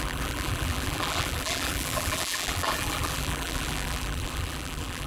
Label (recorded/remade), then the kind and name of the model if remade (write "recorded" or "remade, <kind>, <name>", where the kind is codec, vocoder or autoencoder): remade, vocoder, BigVGAN v2